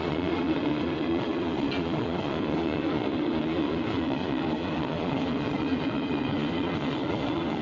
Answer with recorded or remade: remade